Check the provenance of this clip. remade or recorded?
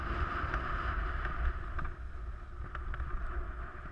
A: recorded